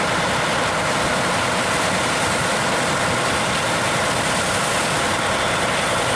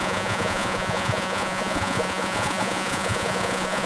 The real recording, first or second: first